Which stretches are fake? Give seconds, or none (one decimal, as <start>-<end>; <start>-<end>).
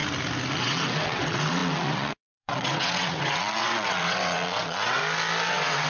0.6-5.0; 5.5-5.9